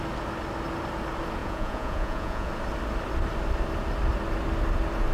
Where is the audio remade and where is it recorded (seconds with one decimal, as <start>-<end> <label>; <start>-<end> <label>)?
0.0-1.4 recorded; 1.4-2.5 remade; 2.5-5.1 recorded